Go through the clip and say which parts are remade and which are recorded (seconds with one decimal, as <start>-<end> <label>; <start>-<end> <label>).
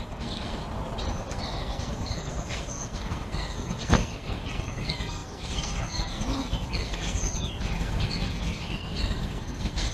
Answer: 0.0-0.6 remade; 0.6-1.3 recorded; 1.3-9.9 remade